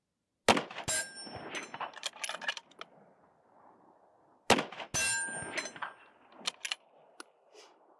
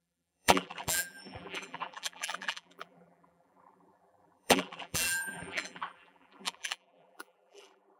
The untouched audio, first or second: first